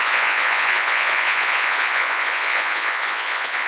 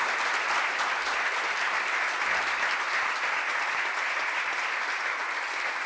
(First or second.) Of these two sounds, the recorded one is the second